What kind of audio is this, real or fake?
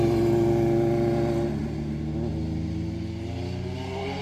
real